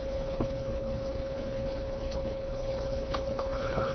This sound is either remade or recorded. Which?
remade